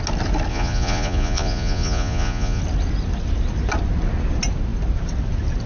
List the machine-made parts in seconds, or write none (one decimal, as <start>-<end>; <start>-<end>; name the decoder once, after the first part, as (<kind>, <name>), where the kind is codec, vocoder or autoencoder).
0.5-2.6 (vocoder, Vocos)